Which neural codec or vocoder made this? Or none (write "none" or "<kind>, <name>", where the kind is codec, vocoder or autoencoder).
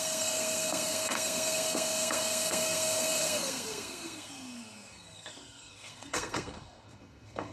codec, SNAC